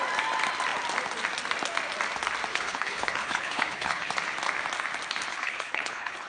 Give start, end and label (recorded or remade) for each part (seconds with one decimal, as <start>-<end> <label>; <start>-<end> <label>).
0.0-2.5 recorded; 2.5-4.1 remade; 4.1-5.3 recorded; 5.3-6.3 remade